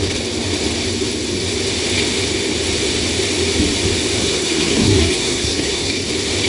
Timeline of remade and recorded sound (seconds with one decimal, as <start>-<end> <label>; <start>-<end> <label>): 0.0-4.2 recorded; 4.2-6.1 remade; 6.1-6.5 recorded